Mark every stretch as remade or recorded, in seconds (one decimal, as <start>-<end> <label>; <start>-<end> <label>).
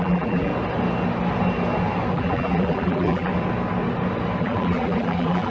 0.0-0.5 remade; 0.5-2.1 recorded; 2.1-3.3 remade; 3.3-4.4 recorded; 4.4-5.5 remade